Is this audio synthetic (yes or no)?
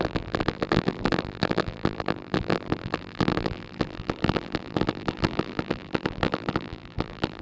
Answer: yes